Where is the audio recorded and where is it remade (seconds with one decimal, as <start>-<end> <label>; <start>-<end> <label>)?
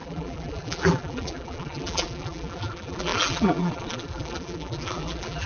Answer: 0.0-5.5 remade